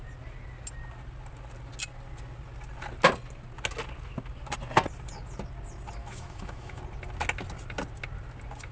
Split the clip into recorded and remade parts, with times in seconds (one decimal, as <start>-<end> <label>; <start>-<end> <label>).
0.0-6.0 recorded; 6.0-6.8 remade; 6.8-8.7 recorded